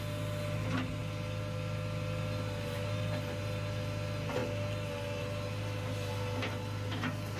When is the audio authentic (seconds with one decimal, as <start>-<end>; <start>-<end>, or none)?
0.0-7.4